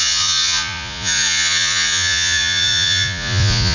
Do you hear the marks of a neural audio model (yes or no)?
yes